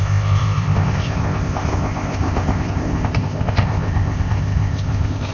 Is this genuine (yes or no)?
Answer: no